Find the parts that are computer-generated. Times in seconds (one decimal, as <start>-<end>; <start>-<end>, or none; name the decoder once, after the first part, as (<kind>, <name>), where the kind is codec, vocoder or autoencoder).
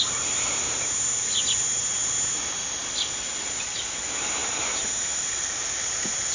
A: none